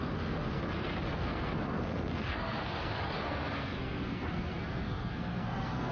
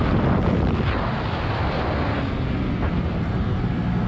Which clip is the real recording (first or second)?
second